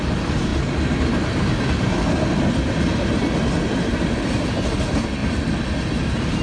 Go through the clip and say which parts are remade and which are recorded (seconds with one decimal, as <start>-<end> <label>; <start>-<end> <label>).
0.0-6.4 recorded